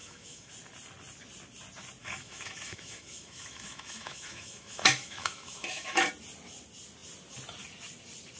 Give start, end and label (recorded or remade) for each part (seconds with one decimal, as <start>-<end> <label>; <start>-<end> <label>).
0.0-0.5 remade; 0.5-2.0 recorded; 2.0-6.1 remade; 6.1-8.4 recorded